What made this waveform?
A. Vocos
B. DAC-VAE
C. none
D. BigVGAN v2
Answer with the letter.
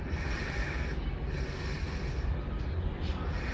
C